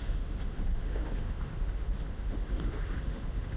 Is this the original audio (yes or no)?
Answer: no